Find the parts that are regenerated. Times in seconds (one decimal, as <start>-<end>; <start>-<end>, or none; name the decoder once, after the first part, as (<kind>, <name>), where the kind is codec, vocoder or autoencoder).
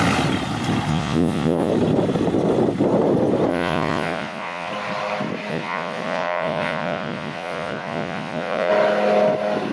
0.9-1.7 (vocoder, Vocos); 3.5-4.7; 5.5-8.7